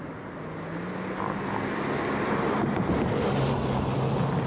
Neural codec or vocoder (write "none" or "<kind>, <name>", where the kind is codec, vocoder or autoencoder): none